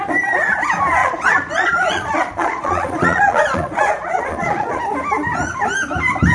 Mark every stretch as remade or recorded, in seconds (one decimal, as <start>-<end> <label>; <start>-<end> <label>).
0.0-1.0 recorded; 1.0-4.8 remade; 4.8-6.3 recorded